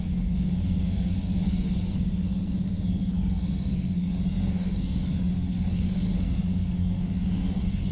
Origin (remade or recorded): remade